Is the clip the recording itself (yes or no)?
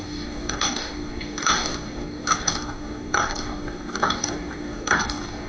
no